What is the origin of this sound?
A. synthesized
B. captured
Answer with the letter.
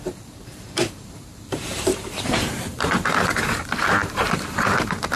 A